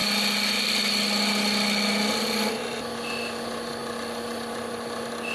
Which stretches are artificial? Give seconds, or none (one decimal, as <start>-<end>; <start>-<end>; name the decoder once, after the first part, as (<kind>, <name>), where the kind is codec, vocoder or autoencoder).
none